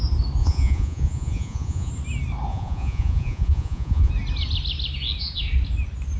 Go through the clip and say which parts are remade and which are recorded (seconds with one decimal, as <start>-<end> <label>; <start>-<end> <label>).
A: 0.0-0.4 recorded; 0.4-1.9 remade; 1.9-2.5 recorded; 2.5-4.1 remade; 4.1-6.2 recorded